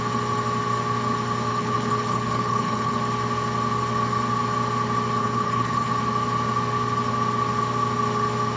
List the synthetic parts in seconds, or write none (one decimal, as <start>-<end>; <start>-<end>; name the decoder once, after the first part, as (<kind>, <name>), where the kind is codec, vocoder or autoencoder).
1.5-3.0 (codec, HILCodec); 5.2-5.9